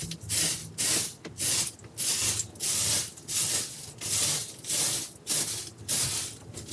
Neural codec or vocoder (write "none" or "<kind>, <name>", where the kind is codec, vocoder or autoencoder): none